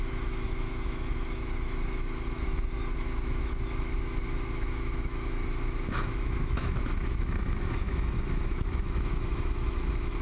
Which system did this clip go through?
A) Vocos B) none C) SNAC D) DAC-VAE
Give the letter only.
D